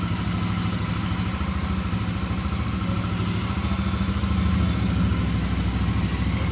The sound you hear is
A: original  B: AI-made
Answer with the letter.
A